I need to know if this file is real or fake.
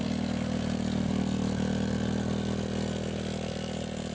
real